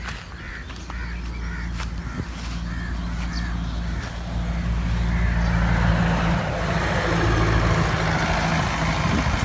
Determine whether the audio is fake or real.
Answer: real